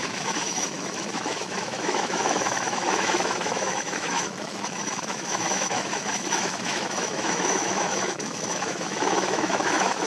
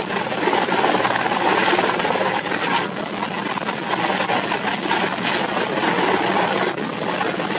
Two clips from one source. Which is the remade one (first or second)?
first